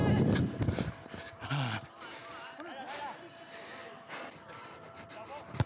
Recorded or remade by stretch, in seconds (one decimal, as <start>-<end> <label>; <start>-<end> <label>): 0.0-5.7 recorded